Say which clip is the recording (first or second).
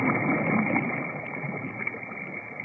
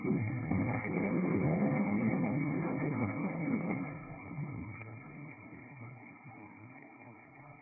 first